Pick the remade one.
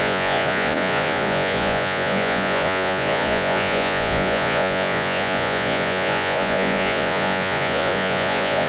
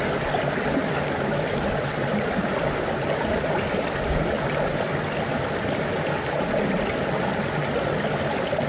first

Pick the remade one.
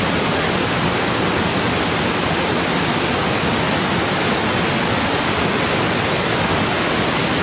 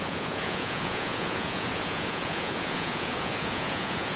second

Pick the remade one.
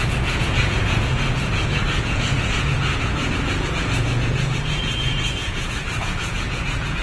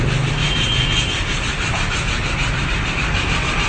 first